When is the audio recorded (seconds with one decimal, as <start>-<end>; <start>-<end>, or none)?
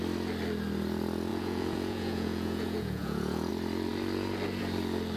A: 0.0-1.3; 3.5-5.2